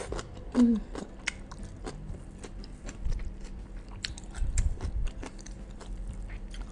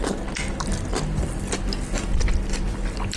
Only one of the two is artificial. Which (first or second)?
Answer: first